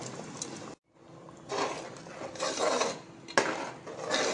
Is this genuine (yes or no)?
yes